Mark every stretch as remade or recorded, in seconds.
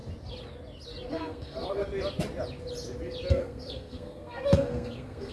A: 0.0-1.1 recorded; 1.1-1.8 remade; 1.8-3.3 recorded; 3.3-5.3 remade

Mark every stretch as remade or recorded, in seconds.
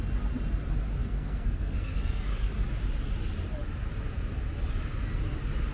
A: 0.0-1.0 recorded; 1.0-2.5 remade; 2.5-5.7 recorded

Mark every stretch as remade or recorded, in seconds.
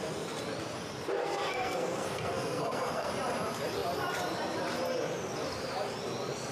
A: 0.0-1.2 recorded; 1.2-3.1 remade; 3.1-6.5 recorded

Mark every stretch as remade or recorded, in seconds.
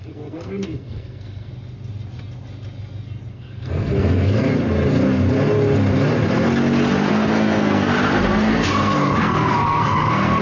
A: 0.0-1.5 remade; 1.5-3.3 recorded; 3.3-4.5 remade; 4.5-7.1 recorded; 7.1-7.9 remade; 7.9-8.5 recorded; 8.5-10.4 remade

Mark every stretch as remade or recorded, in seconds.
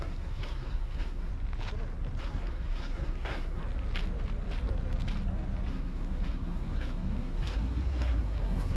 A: 0.0-1.3 remade; 1.3-2.2 recorded; 2.2-3.6 remade; 3.6-5.7 recorded; 5.7-8.8 remade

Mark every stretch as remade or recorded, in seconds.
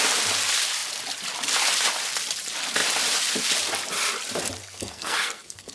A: 0.0-4.6 recorded; 4.6-5.7 remade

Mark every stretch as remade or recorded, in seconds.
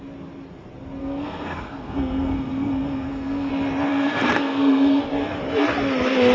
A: 0.0-1.0 recorded; 1.0-3.5 remade; 3.5-3.9 recorded; 3.9-5.0 remade; 5.0-6.3 recorded